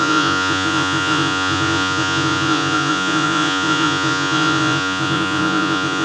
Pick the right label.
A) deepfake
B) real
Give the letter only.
A